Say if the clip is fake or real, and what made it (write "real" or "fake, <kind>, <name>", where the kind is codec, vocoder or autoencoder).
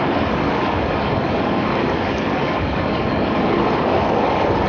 fake, codec, DAC